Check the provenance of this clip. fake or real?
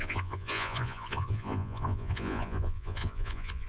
fake